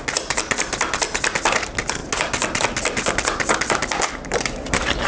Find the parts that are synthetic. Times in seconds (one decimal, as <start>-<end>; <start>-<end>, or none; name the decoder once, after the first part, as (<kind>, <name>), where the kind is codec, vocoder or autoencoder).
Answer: none